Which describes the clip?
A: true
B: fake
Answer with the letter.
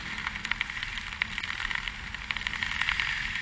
A